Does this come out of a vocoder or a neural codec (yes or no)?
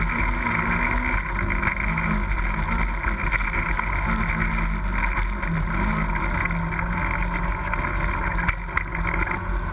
no